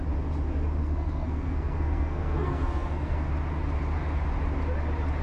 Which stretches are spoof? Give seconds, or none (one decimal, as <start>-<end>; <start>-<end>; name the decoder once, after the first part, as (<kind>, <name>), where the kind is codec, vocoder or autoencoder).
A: 0.8-3.3 (codec, SNAC)